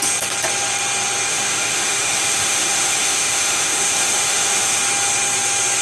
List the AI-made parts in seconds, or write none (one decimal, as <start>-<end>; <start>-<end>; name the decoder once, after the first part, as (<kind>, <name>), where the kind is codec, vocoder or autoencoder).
1.3-4.8 (autoencoder, DAC-VAE)